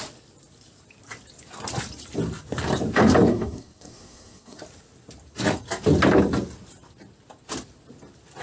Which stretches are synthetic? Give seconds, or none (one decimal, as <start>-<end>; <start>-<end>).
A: 3.3-4.6